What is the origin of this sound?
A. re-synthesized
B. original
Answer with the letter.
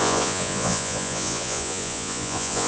A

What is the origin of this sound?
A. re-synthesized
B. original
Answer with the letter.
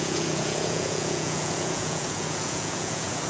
A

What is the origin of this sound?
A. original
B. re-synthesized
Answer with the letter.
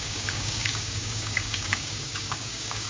B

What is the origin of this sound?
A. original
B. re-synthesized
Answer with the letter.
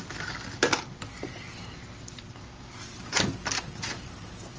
A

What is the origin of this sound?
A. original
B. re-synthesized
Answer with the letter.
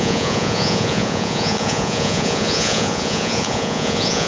B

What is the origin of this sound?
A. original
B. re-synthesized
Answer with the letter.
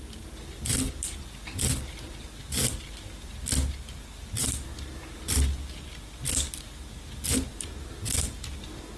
A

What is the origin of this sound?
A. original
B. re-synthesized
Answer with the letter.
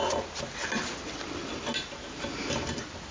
A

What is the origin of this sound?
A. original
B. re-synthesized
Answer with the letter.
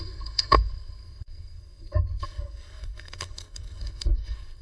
B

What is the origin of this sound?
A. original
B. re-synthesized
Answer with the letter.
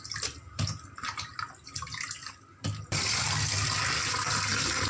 A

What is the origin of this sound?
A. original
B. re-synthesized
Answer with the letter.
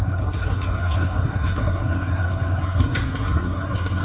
B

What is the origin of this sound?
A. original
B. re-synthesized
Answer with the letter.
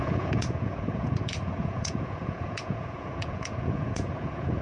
B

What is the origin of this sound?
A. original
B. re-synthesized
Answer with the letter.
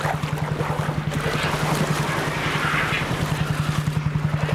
A